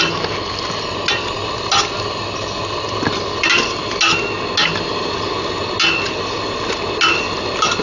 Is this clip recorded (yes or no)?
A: yes